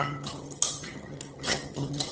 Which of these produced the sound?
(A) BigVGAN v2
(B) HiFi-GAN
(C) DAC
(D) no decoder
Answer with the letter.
B